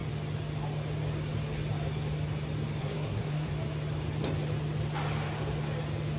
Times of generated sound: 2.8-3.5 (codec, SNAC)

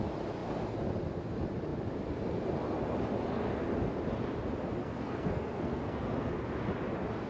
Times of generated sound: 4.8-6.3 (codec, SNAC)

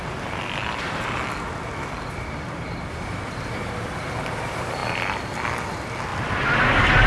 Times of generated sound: none

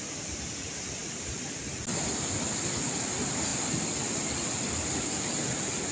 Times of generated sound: none

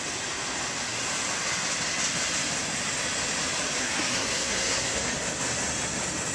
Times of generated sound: 3.8-5.1 (codec, SNAC)

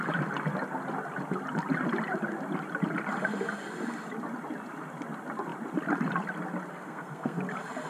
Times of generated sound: 6.7-7.4 (codec, SNAC)

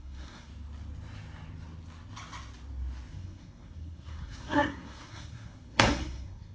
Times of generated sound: 0.0-0.5 (codec, SNAC); 3.1-6.5

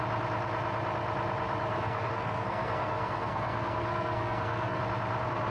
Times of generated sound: 1.7-4.8 (codec, SNAC)